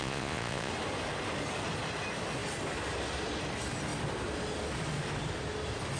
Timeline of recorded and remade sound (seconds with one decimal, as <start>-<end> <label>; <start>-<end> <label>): 0.0-0.7 remade; 0.7-6.0 recorded